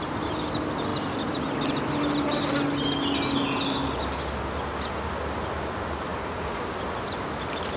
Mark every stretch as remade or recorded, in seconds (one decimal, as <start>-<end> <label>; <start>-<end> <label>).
0.0-7.8 recorded

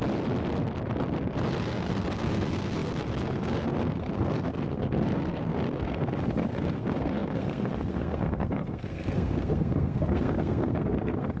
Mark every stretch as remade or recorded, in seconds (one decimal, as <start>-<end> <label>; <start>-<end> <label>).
0.0-1.5 recorded; 1.5-11.4 remade

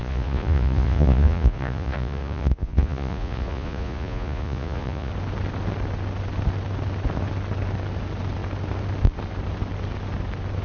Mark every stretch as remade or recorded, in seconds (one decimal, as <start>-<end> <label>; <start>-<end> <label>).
0.0-5.1 remade; 5.1-10.6 recorded